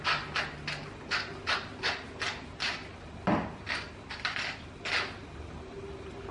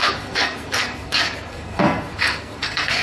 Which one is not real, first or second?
second